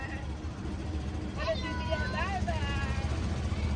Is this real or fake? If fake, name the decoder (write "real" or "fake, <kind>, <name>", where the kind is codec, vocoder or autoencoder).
real